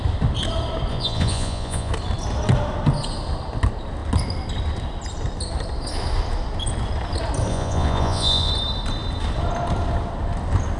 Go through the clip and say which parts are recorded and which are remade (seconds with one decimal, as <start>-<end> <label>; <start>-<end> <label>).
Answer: 0.0-0.9 recorded; 0.9-1.9 remade; 1.9-7.5 recorded; 7.5-8.5 remade; 8.5-10.8 recorded